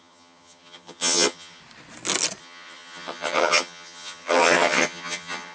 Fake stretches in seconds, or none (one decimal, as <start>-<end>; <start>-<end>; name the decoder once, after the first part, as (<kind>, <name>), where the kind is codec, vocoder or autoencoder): 0.0-1.6 (vocoder, HiFi-GAN); 2.4-5.5